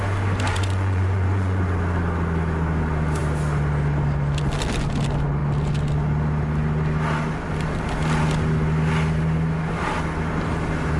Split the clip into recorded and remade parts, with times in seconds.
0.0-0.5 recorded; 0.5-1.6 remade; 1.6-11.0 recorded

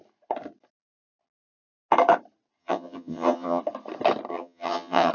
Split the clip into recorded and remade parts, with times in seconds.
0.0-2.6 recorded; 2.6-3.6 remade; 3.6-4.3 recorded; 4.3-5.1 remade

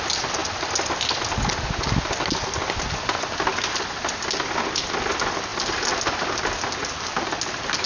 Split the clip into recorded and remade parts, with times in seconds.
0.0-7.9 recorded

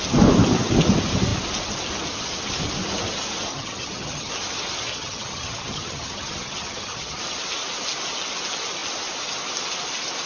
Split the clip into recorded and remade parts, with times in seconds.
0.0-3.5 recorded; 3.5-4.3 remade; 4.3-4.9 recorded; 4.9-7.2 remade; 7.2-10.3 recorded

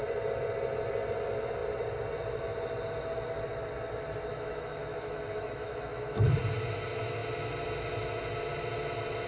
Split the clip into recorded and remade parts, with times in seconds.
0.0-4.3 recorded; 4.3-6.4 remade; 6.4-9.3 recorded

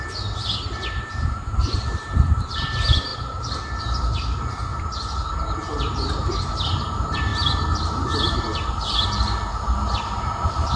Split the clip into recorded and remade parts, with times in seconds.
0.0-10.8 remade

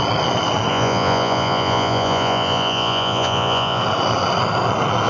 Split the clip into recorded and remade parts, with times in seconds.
0.0-0.7 recorded; 0.7-3.8 remade; 3.8-5.1 recorded

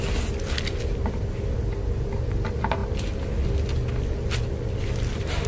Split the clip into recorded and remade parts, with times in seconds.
0.0-5.5 recorded